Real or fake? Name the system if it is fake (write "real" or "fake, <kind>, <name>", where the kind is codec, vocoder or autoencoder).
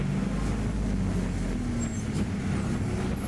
real